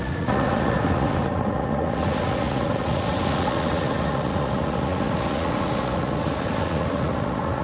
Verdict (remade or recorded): remade